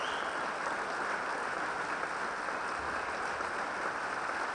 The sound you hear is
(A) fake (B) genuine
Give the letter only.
B